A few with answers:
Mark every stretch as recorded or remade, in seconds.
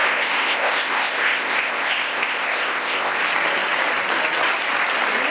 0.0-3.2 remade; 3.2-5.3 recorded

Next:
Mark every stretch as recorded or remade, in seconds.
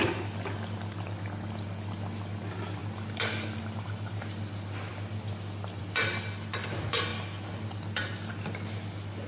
0.0-9.3 recorded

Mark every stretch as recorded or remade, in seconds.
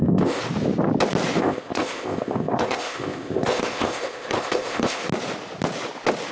0.0-0.4 remade; 0.4-1.4 recorded; 1.4-5.0 remade; 5.0-6.3 recorded